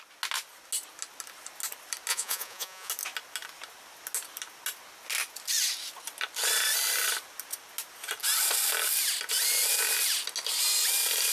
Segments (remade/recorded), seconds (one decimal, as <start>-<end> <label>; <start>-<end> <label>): 0.0-2.1 recorded; 2.1-2.9 remade; 2.9-11.3 recorded